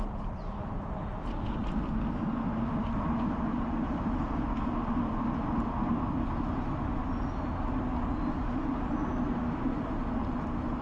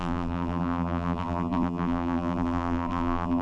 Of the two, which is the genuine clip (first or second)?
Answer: first